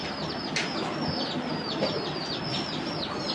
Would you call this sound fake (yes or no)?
no